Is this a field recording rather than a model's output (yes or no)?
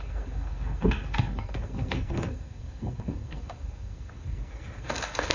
no